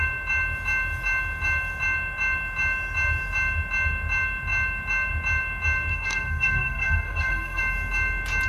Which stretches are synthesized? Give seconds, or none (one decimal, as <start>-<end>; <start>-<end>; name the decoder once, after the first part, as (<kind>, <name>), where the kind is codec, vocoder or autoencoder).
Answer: 5.9-7.6 (codec, SNAC)